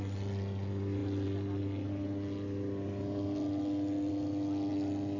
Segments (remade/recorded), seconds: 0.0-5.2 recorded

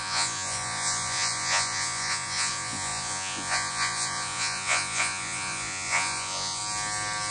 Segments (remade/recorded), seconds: 0.0-6.6 remade; 6.6-7.3 recorded

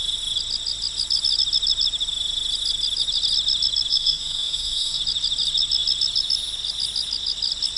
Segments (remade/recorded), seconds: 0.0-3.9 recorded; 3.9-5.0 remade; 5.0-7.8 recorded

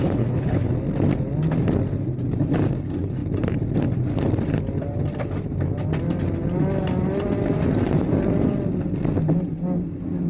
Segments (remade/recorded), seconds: 0.0-0.7 remade; 0.7-10.3 recorded

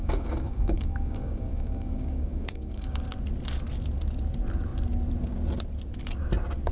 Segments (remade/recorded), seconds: 0.0-3.0 remade; 3.0-6.7 recorded

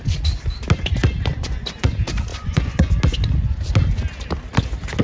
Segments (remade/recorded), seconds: 0.0-1.3 recorded; 1.3-1.9 remade; 1.9-2.3 recorded; 2.3-2.9 remade; 2.9-5.0 recorded

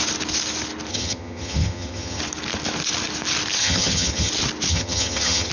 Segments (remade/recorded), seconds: 0.0-0.9 recorded; 0.9-2.2 remade; 2.2-3.6 recorded; 3.6-4.3 remade; 4.3-4.7 recorded; 4.7-5.5 remade

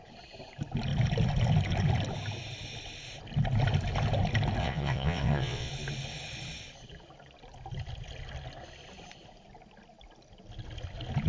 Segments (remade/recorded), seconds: 0.0-4.6 recorded; 4.6-5.7 remade; 5.7-11.3 recorded